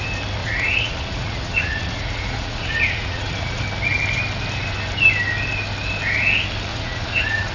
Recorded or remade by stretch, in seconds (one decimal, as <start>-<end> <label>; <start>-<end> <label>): 0.0-0.4 recorded; 0.4-3.6 remade; 3.6-6.7 recorded; 6.7-7.5 remade